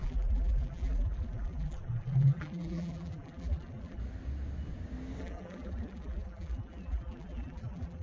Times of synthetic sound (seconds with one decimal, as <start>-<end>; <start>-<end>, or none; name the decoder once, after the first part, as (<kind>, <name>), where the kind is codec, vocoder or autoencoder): 0.0-4.0 (vocoder, BigVGAN v2); 5.2-8.0

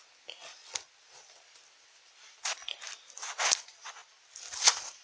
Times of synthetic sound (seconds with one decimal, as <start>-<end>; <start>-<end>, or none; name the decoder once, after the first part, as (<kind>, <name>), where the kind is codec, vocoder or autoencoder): 0.0-4.0 (vocoder, BigVGAN v2); 4.5-5.0

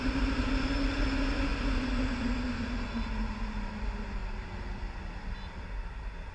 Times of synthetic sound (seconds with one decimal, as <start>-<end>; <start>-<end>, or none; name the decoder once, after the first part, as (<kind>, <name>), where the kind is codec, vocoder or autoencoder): 4.2-5.0 (vocoder, BigVGAN v2)

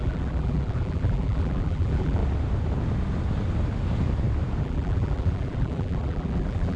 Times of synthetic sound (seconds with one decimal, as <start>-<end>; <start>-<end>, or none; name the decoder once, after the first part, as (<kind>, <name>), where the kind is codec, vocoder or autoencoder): 0.0-2.2 (vocoder, BigVGAN v2); 4.6-6.8

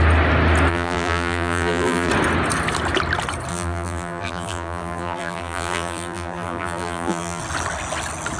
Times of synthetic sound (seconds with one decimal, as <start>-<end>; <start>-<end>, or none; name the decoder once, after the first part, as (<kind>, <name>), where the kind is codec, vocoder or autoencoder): 0.7-2.1 (vocoder, BigVGAN v2); 3.5-7.4

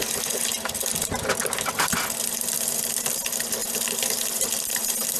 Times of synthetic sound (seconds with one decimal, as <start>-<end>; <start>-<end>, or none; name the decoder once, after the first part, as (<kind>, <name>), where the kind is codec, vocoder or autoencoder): 3.6-5.2 (vocoder, BigVGAN v2)